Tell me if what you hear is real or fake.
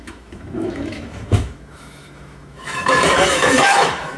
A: fake